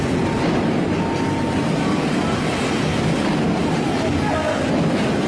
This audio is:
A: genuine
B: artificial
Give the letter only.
A